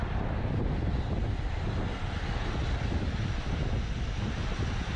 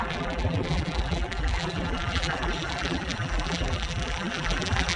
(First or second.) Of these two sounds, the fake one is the second